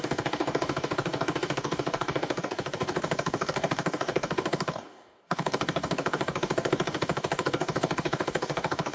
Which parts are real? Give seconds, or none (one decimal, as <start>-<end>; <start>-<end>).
none